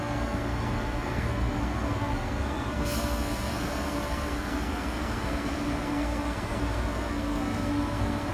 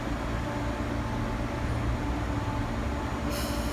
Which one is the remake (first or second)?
first